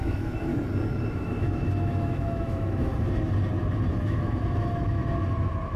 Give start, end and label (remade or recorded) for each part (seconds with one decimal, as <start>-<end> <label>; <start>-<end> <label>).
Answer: 0.0-0.5 remade; 0.5-1.1 recorded; 1.1-2.9 remade; 2.9-3.9 recorded; 3.9-5.0 remade; 5.0-5.8 recorded